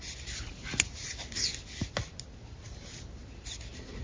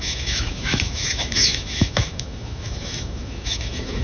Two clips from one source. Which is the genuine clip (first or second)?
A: first